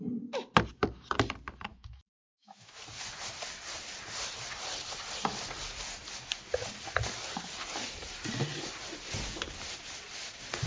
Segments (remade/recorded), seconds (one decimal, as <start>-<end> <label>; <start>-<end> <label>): 0.0-1.7 recorded; 1.7-2.8 remade; 2.8-10.7 recorded